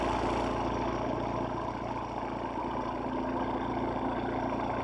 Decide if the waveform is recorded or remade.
recorded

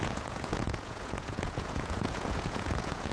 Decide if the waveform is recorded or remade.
remade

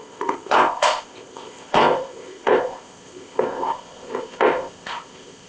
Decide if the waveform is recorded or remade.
remade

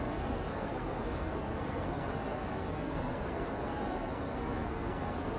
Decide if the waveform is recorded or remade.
remade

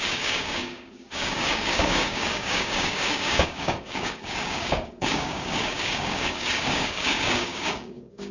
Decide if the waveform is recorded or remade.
remade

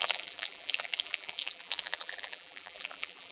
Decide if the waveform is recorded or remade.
remade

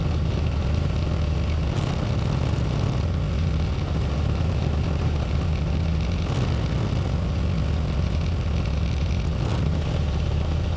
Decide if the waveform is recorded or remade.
recorded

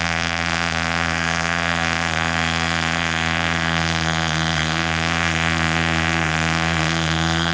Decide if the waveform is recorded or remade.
remade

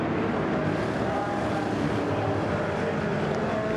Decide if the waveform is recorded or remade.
recorded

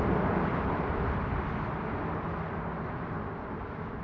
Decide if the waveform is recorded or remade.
recorded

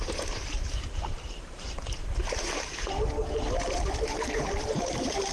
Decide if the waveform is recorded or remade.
remade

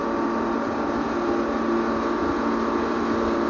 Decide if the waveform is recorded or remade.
recorded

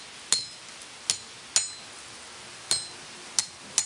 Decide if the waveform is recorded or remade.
recorded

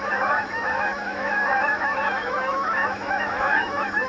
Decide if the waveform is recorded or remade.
remade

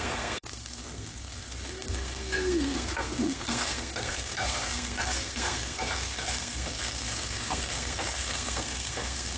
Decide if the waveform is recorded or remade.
remade